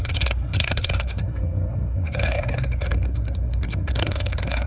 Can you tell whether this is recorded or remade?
remade